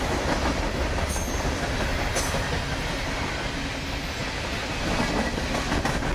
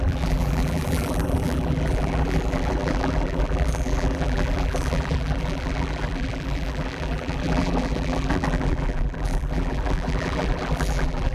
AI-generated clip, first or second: second